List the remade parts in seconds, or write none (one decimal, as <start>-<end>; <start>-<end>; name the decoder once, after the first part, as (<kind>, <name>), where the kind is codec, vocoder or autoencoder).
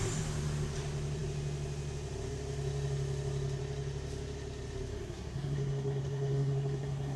4.9-7.2 (codec, SNAC)